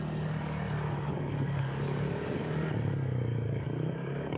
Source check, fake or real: fake